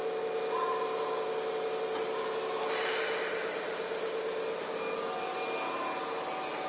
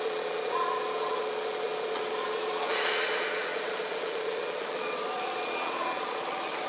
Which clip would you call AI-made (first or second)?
second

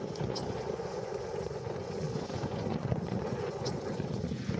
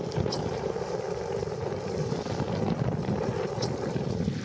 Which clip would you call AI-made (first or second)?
first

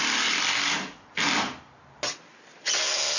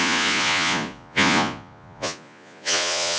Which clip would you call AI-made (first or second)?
second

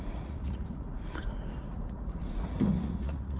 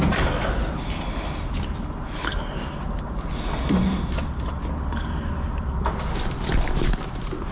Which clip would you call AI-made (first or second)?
first